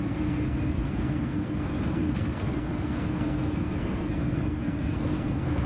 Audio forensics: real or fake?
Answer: fake